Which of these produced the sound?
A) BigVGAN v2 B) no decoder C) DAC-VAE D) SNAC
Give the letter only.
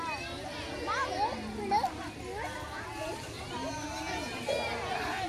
B